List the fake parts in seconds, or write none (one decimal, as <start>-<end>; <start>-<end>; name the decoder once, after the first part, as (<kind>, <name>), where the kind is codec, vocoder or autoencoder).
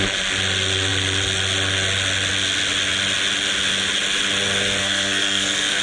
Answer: 4.8-5.8 (codec, SNAC)